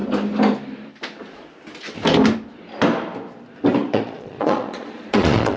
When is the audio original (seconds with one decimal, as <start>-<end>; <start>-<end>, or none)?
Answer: 0.0-3.8